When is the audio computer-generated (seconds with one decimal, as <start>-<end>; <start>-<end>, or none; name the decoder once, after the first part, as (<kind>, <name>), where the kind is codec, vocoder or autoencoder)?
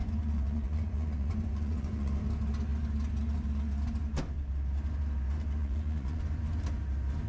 0.0-2.1 (vocoder, Vocos); 5.6-6.2